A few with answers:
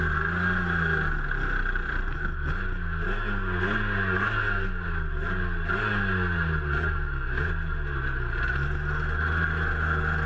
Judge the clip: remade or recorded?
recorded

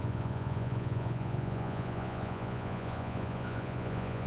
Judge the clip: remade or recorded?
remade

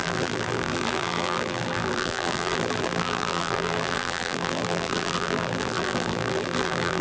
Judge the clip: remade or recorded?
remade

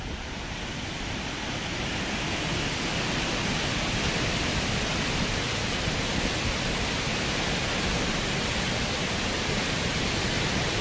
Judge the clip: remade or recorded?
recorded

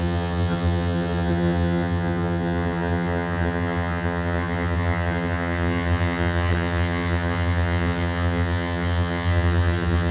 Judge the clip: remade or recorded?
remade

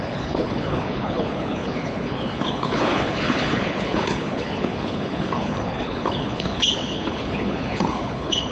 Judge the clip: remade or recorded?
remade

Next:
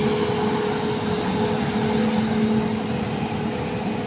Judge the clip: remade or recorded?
recorded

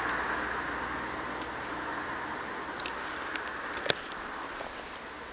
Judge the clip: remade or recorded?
recorded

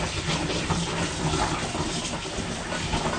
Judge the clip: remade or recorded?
recorded